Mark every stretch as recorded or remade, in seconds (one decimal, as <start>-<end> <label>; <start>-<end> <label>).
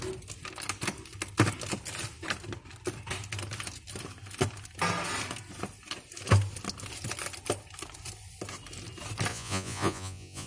0.0-9.3 recorded; 9.3-10.5 remade